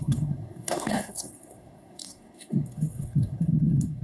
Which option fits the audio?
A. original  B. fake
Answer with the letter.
B